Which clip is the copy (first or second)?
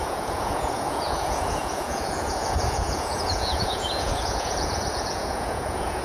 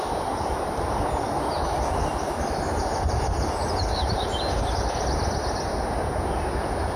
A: first